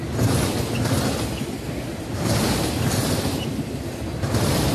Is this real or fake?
real